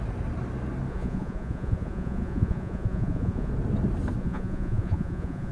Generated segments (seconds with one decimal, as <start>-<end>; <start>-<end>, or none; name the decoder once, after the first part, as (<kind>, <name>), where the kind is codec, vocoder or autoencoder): 0.9-3.5 (vocoder, Vocos); 4.2-5.5